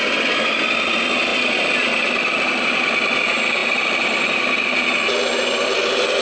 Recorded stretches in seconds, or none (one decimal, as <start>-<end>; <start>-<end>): 0.0-6.2